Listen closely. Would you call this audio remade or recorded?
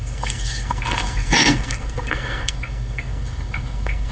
remade